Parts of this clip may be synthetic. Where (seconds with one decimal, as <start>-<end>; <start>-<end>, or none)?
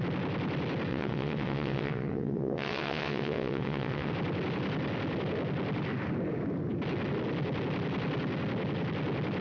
0.9-4.1